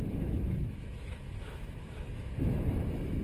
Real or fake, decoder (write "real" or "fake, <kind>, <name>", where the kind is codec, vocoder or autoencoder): fake, autoencoder, DAC-VAE